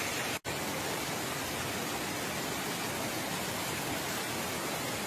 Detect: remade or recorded recorded